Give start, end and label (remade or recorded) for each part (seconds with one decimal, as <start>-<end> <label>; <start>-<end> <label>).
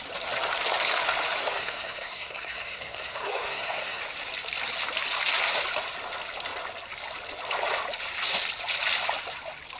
0.0-1.4 recorded; 1.4-4.0 remade; 4.0-9.8 recorded